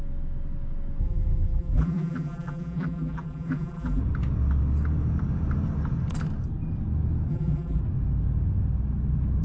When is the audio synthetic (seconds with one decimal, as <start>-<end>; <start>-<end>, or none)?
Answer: 1.0-4.0; 7.3-7.8